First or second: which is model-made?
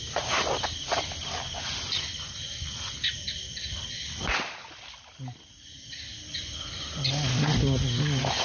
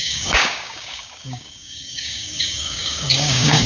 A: second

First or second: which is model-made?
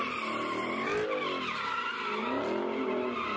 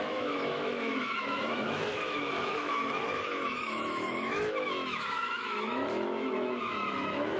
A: second